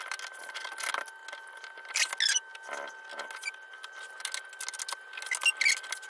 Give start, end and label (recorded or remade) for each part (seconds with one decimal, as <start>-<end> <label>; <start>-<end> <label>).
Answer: 0.0-6.1 recorded